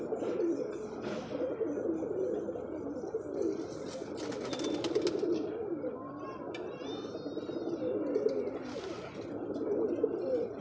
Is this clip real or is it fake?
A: real